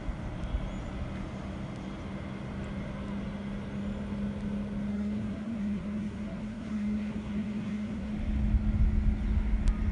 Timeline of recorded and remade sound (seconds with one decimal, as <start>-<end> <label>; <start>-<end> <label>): 0.0-4.9 recorded; 4.9-8.1 remade; 8.1-9.9 recorded